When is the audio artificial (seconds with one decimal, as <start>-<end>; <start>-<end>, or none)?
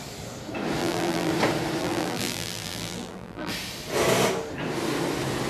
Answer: 0.8-1.3; 1.8-3.5